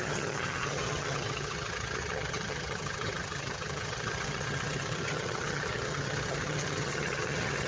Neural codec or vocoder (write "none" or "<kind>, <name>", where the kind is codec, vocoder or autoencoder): vocoder, HiFi-GAN